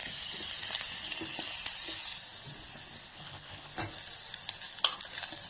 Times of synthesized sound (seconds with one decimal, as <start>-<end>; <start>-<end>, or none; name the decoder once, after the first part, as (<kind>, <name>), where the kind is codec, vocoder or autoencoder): 3.1-3.7 (codec, HILCodec)